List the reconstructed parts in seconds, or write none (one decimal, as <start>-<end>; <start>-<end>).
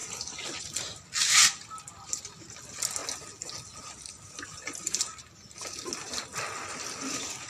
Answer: none